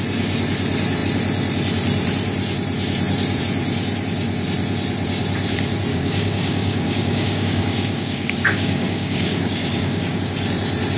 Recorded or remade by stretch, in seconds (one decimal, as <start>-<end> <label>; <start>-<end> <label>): 0.0-5.9 recorded; 5.9-10.2 remade; 10.2-11.0 recorded